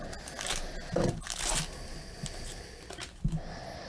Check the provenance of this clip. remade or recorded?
recorded